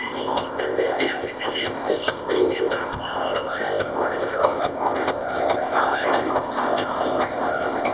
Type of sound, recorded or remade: remade